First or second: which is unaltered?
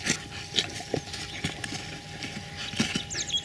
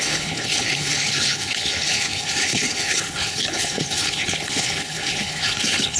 first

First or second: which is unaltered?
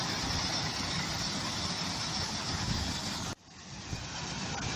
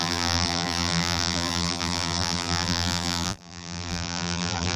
first